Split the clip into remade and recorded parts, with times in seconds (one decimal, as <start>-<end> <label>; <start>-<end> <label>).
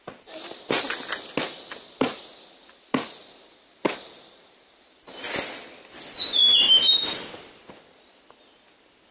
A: 0.0-9.1 recorded